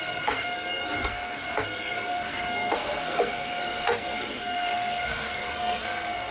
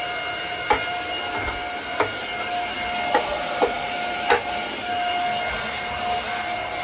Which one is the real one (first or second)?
second